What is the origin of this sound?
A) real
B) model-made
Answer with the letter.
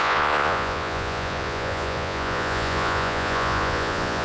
B